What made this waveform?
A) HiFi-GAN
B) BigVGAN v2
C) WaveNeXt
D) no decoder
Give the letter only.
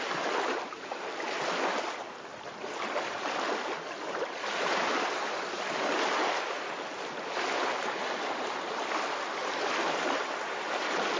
D